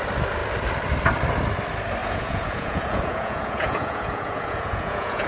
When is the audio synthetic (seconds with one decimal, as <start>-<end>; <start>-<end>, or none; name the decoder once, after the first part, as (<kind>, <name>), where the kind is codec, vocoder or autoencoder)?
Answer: 2.0-5.3 (vocoder, Vocos)